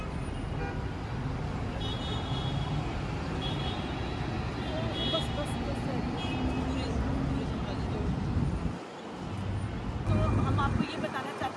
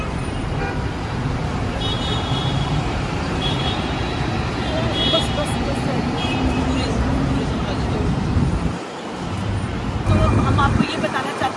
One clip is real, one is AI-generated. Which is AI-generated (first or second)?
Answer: second